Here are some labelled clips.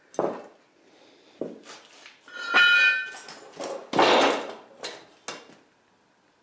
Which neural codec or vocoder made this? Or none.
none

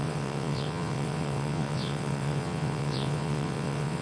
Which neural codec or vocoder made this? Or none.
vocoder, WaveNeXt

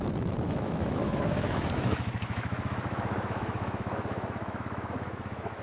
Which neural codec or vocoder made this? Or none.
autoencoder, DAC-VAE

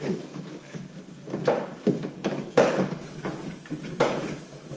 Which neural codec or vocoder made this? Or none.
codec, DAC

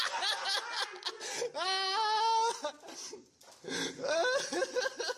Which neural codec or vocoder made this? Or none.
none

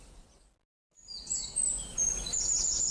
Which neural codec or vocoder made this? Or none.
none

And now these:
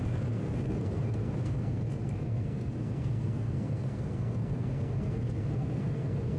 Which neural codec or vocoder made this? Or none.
codec, SNAC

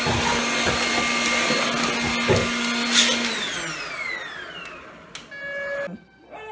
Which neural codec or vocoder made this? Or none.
none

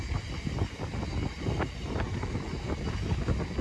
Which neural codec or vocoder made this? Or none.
none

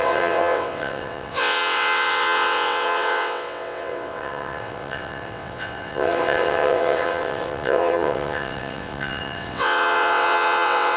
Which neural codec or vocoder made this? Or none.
vocoder, WaveNeXt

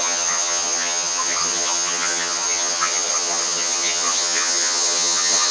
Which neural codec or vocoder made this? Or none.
vocoder, HiFi-GAN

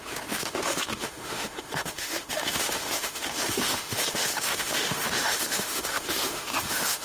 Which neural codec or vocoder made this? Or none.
autoencoder, DAC-VAE